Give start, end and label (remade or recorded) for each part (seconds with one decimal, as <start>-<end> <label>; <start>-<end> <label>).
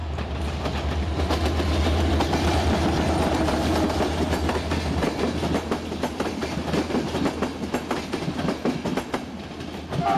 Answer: 0.0-10.2 recorded